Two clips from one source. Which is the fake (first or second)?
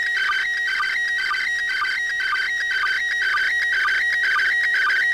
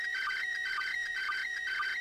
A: second